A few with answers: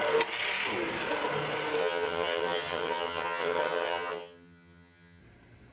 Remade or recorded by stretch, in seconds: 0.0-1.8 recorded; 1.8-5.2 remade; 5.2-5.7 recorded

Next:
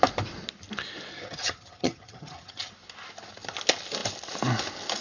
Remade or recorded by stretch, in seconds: 0.0-1.1 recorded; 1.1-2.7 remade; 2.7-5.0 recorded

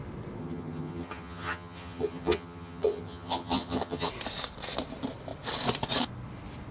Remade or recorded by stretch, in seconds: 0.0-0.4 recorded; 0.4-4.1 remade; 4.1-6.7 recorded

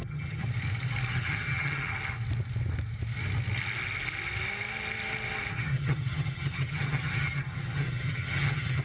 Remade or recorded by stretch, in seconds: 0.0-0.4 remade; 0.4-1.1 recorded; 1.1-1.9 remade; 1.9-5.5 recorded; 5.5-8.8 remade